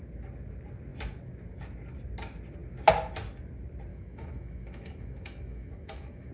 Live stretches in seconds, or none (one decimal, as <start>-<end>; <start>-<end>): 0.0-3.9